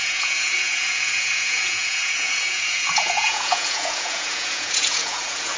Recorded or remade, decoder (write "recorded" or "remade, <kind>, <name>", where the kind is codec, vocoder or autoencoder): remade, vocoder, Vocos